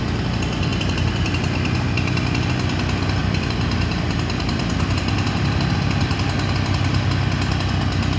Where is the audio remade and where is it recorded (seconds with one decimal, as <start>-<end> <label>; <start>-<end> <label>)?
0.0-0.7 recorded; 0.7-1.3 remade; 1.3-3.2 recorded; 3.2-5.7 remade; 5.7-8.2 recorded